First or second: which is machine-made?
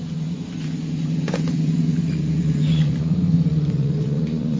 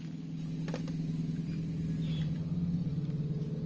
first